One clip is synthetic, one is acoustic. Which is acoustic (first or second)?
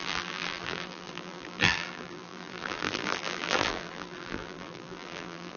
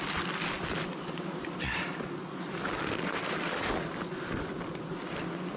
second